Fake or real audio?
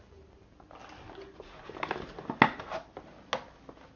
real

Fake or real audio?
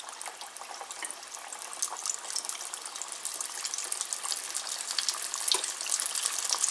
real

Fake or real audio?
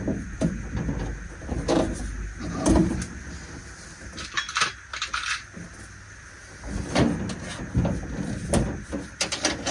real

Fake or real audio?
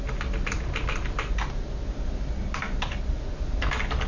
real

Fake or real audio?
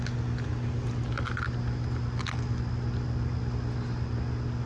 real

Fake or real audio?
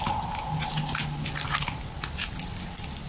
real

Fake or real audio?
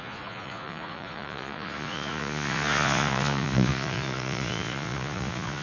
fake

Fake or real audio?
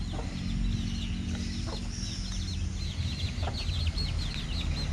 real